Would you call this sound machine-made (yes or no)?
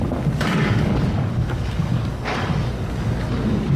yes